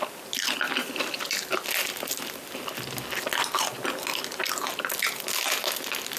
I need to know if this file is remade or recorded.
recorded